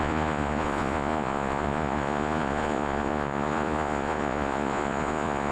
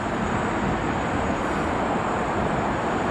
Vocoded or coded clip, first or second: first